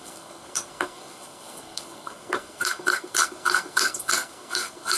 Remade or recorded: remade